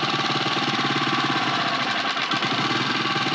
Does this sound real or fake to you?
real